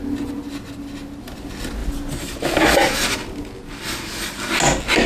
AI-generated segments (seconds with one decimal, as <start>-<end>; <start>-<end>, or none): none